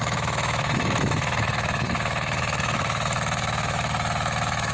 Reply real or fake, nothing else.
fake